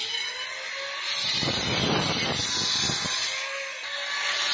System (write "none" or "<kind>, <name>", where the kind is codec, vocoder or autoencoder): none